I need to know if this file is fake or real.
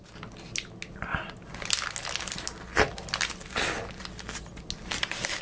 real